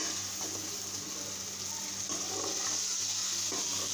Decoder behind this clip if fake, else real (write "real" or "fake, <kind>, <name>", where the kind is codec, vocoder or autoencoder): real